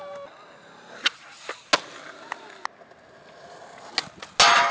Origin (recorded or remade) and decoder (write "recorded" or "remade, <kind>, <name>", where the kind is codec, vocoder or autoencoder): recorded